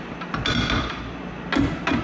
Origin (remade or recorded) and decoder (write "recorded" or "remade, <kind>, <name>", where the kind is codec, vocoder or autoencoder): recorded